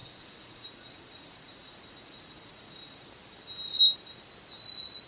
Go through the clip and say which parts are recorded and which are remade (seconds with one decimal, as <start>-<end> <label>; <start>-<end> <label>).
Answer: 0.0-3.1 remade; 3.1-5.1 recorded